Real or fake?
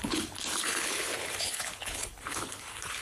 fake